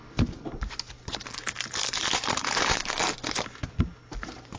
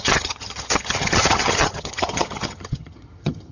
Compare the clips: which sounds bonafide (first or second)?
first